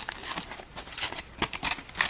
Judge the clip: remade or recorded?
recorded